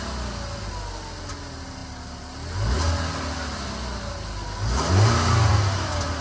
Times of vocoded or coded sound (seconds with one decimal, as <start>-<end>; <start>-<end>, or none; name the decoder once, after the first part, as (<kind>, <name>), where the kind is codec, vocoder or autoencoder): none